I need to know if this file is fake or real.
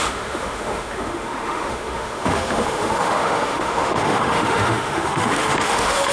fake